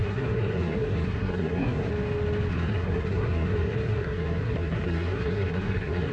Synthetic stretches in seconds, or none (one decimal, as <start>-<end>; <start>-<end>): 0.0-1.9; 2.5-6.1